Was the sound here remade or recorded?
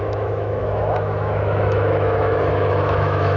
remade